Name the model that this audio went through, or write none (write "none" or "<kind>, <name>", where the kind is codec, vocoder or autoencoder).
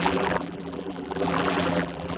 vocoder, BigVGAN v2